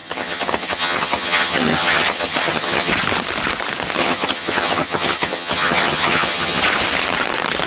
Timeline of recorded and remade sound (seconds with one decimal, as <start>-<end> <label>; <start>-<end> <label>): 0.0-2.9 remade; 2.9-4.0 recorded; 4.0-6.6 remade; 6.6-7.7 recorded